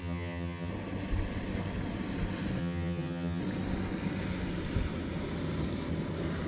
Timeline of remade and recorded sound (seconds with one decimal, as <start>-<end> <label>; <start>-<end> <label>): 0.0-0.7 remade; 0.7-2.6 recorded; 2.6-3.4 remade; 3.4-6.5 recorded